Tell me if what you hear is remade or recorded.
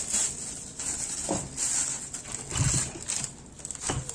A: recorded